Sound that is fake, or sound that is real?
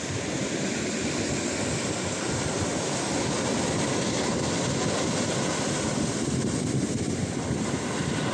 fake